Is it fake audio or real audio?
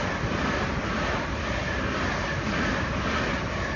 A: real